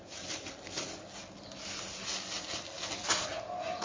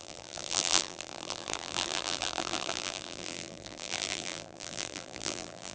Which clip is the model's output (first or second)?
second